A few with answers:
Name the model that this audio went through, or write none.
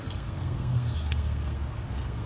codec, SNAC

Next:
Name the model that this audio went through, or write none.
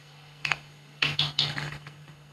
codec, SNAC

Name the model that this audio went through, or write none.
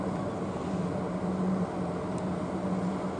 none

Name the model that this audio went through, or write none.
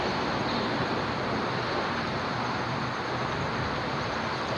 none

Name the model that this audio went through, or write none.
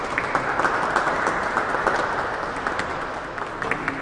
none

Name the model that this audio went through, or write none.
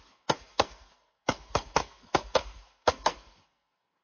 codec, SNAC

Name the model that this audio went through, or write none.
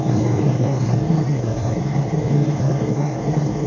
codec, SNAC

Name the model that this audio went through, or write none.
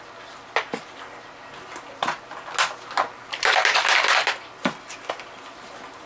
none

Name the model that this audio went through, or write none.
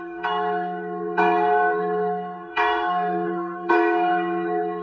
codec, SNAC